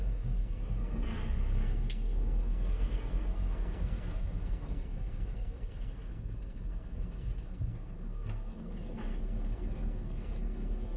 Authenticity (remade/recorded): remade